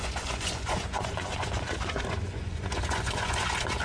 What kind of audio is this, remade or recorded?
remade